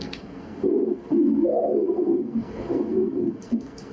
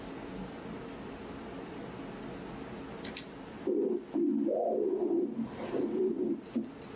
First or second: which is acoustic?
second